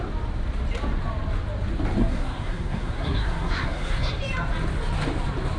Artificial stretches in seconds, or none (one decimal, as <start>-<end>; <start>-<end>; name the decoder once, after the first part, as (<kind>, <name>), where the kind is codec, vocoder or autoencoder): 2.0-4.2 (codec, SNAC)